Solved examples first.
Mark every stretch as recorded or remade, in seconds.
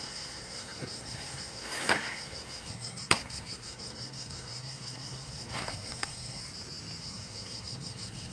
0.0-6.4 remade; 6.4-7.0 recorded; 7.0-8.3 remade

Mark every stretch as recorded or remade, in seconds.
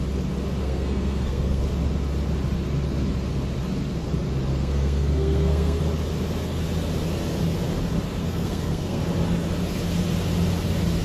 0.0-0.6 recorded; 0.6-1.6 remade; 1.6-4.5 recorded; 4.5-5.8 remade; 5.8-8.2 recorded; 8.2-9.0 remade; 9.0-11.0 recorded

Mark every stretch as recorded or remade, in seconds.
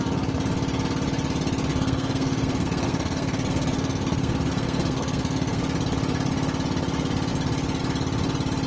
0.0-1.7 recorded; 1.7-5.6 remade; 5.6-8.7 recorded